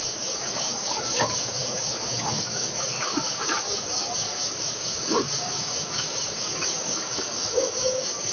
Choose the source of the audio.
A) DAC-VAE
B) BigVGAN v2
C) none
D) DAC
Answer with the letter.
D